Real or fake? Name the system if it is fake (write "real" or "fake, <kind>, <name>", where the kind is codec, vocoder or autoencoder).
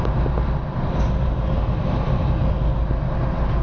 real